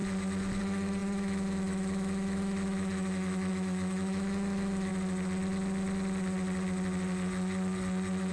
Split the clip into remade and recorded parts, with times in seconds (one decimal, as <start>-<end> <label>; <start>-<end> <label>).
0.0-0.6 recorded; 0.6-4.9 remade; 4.9-8.3 recorded